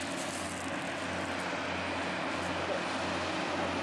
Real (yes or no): yes